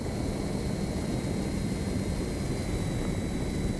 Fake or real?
real